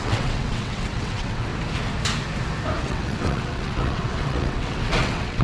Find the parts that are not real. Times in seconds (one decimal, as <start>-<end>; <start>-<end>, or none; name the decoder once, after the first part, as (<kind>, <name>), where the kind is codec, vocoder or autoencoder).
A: 0.0-1.5 (vocoder, WaveNeXt); 2.8-5.4